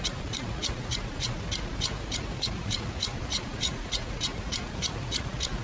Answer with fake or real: fake